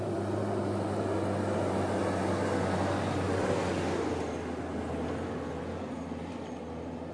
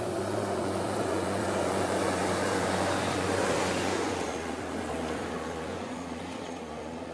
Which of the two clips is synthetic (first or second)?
second